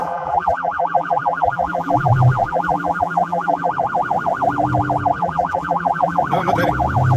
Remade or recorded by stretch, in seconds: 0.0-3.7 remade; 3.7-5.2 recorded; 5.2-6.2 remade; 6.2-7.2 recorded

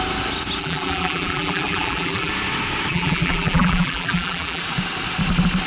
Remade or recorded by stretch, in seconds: 0.0-0.6 recorded; 0.6-2.3 remade; 2.3-2.9 recorded; 2.9-4.6 remade; 4.6-5.7 recorded

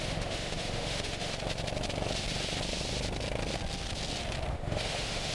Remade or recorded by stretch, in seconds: 0.0-1.3 remade; 1.3-4.5 recorded; 4.5-5.3 remade

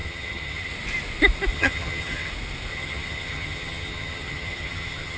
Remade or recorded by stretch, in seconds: 0.0-0.7 remade; 0.7-1.5 recorded; 1.5-2.3 remade; 2.3-2.7 recorded; 2.7-5.2 remade

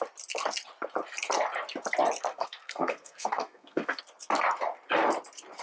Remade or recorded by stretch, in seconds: 0.0-2.3 recorded; 2.3-4.0 remade; 4.0-5.6 recorded

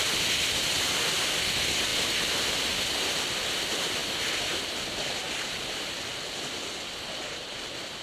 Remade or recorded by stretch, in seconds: 0.0-8.0 recorded

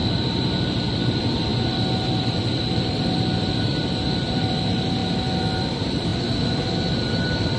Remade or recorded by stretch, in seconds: 0.0-5.0 remade; 5.0-5.5 recorded; 5.5-6.1 remade; 6.1-6.9 recorded; 6.9-7.6 remade